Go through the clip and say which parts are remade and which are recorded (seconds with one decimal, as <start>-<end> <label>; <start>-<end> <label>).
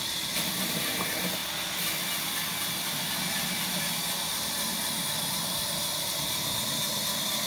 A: 0.0-1.4 remade; 1.4-3.8 recorded; 3.8-7.5 remade